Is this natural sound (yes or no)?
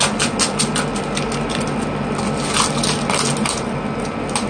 yes